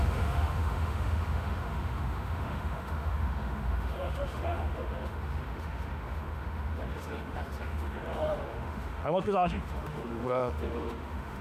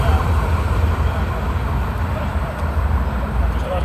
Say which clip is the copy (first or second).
first